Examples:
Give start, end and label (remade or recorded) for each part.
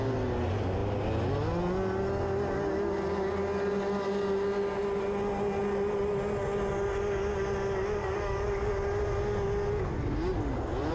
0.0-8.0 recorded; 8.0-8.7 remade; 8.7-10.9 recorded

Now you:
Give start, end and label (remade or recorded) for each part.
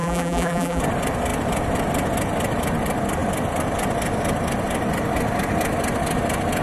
0.0-0.8 remade; 0.8-6.6 recorded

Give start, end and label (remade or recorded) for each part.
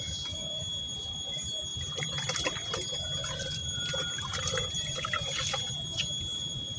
0.0-3.6 recorded; 3.6-5.6 remade; 5.6-6.8 recorded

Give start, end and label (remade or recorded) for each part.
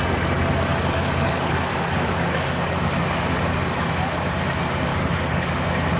0.0-0.7 recorded; 0.7-3.9 remade; 3.9-4.9 recorded; 4.9-5.5 remade; 5.5-6.0 recorded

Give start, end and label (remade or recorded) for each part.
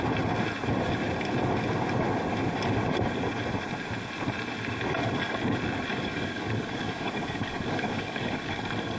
0.0-5.9 recorded; 5.9-8.6 remade; 8.6-9.0 recorded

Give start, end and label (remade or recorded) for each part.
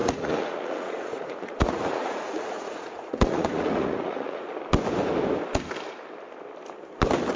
0.0-4.4 remade; 4.4-7.4 recorded